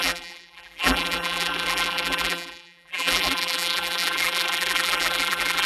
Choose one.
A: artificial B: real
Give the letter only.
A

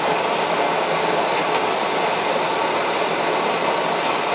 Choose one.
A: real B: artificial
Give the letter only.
A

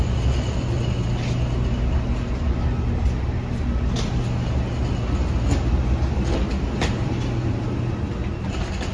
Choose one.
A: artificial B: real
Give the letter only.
B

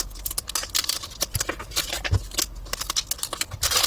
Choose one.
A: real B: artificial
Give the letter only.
A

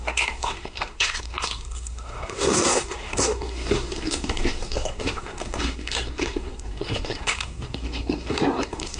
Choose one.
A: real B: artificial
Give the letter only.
B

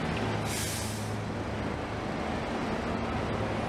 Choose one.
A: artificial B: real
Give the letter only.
B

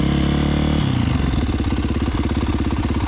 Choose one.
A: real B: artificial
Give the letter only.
A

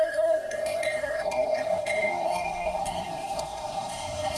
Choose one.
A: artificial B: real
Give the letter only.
A